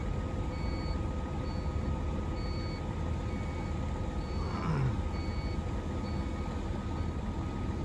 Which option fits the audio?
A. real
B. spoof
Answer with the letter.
A